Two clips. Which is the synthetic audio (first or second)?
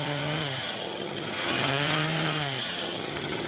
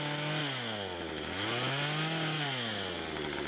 first